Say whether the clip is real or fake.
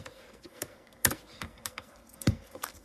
fake